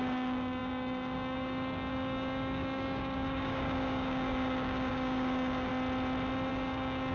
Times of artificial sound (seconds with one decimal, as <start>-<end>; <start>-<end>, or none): 0.0-5.7; 6.5-7.1